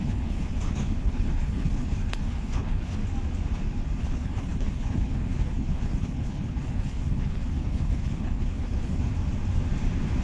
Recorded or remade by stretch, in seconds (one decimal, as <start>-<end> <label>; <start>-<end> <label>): 0.0-3.0 remade; 3.0-4.0 recorded; 4.0-9.1 remade; 9.1-10.2 recorded